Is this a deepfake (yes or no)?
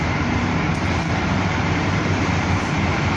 yes